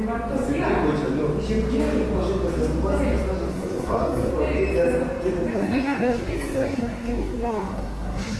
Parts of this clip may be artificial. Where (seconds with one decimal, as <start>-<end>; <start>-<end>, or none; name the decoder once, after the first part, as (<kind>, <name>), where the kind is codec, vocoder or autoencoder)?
3.5-4.3 (codec, SNAC); 5.5-8.4